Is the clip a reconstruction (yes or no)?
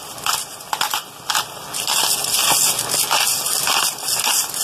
no